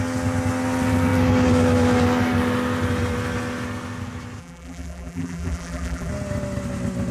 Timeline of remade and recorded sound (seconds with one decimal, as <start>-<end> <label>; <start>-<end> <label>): 0.0-4.4 recorded; 4.4-6.1 remade; 6.1-7.1 recorded